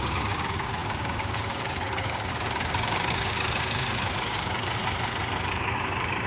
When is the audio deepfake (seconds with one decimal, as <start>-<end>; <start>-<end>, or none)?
0.0-4.8; 5.5-6.3